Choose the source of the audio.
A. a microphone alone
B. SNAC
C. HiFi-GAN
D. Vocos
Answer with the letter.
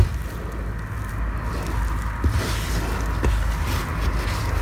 A